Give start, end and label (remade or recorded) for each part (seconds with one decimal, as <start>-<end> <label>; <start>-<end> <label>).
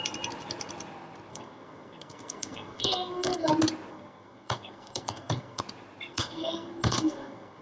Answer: 0.0-1.3 recorded; 1.3-3.5 remade; 3.5-3.9 recorded; 3.9-5.6 remade; 5.6-6.1 recorded; 6.1-7.6 remade